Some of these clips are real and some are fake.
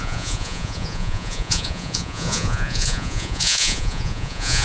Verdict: fake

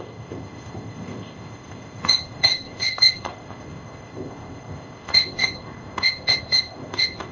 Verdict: fake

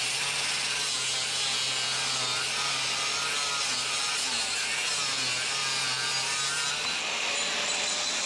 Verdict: real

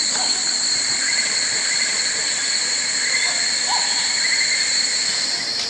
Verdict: real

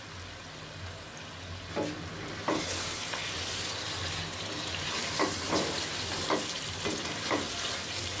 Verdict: real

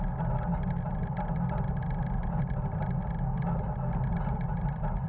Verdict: real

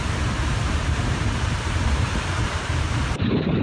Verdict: fake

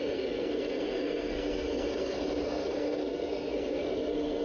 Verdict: fake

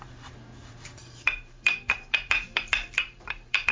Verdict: fake